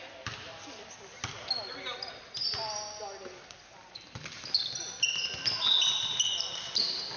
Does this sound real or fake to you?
real